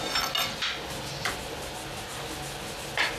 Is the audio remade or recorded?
recorded